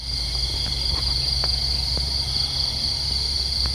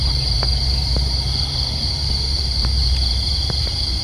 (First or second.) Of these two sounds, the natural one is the first